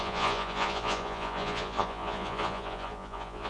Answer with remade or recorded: remade